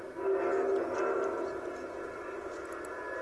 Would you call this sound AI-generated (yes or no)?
no